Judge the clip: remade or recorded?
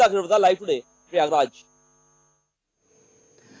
recorded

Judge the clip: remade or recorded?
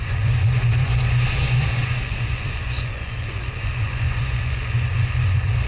remade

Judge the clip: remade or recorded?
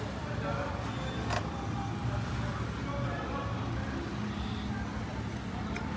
recorded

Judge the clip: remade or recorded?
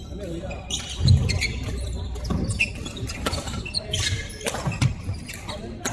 recorded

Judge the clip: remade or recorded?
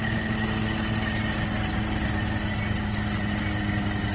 recorded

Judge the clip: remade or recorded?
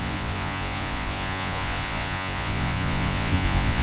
remade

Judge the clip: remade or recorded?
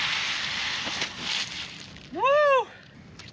recorded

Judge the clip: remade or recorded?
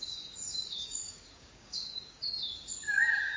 remade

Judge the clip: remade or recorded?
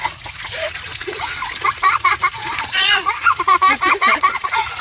remade